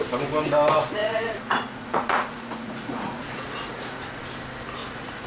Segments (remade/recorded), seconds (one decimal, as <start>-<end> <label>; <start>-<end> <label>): 0.0-1.0 recorded; 1.0-4.2 remade; 4.2-4.8 recorded; 4.8-5.3 remade